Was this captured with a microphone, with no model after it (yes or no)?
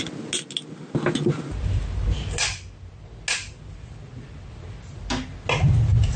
yes